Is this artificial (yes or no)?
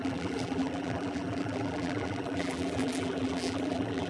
yes